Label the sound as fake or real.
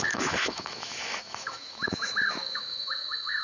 fake